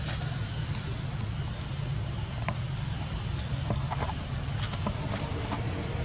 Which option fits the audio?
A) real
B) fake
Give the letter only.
A